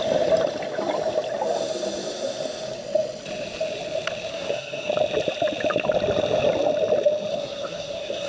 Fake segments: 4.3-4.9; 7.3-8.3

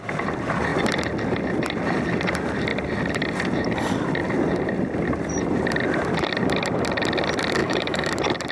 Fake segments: 7.6-8.1

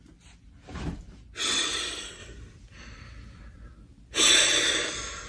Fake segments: none

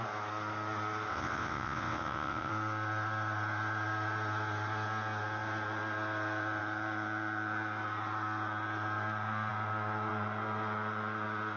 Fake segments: 1.1-2.5